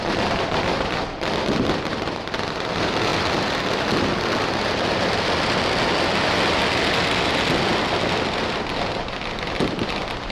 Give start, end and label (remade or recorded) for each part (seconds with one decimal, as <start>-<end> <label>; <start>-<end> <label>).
0.0-10.3 recorded